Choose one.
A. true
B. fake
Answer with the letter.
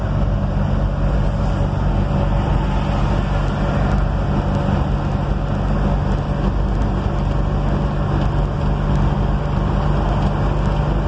A